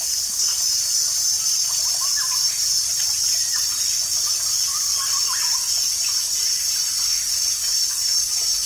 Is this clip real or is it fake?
real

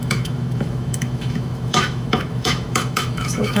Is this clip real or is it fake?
fake